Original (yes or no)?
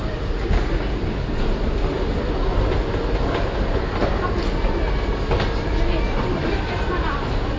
yes